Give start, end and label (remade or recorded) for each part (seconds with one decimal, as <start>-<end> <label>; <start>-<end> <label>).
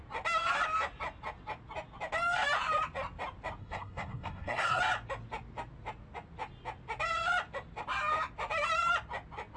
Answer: 0.0-3.6 recorded; 3.6-4.8 remade; 4.8-9.6 recorded